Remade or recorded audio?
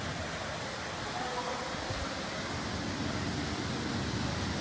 recorded